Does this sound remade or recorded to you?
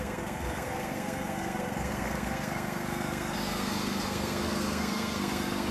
remade